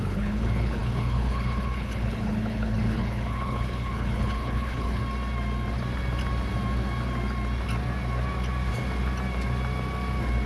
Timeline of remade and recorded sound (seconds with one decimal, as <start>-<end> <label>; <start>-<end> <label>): 0.0-5.0 remade; 5.0-10.5 recorded